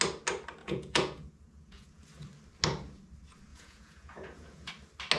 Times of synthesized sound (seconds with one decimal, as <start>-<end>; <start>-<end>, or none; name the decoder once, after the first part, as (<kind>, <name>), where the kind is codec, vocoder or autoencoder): 0.6-2.0 (vocoder, Vocos); 3.5-4.7